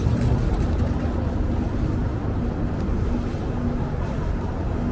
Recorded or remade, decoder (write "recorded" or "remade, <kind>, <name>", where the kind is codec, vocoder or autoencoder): recorded